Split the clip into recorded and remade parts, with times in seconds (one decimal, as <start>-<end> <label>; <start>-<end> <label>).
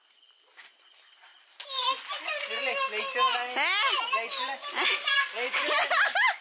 0.0-6.4 recorded